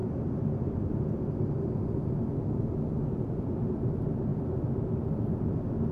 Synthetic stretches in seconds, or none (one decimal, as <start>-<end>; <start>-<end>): 0.0-0.9